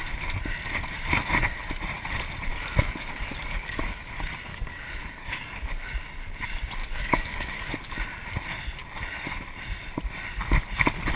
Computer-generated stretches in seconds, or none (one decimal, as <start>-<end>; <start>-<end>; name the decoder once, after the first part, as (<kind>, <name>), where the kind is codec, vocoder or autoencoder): 2.5-4.0 (codec, DAC); 4.5-5.9; 6.8-7.7